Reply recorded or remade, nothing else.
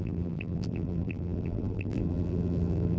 remade